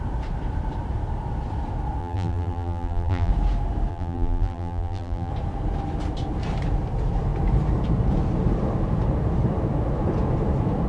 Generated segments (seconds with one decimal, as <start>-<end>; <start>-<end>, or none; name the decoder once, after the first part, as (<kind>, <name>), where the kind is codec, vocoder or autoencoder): 2.0-3.3 (vocoder, BigVGAN v2); 3.9-5.3